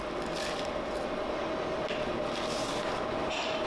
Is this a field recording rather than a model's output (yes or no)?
yes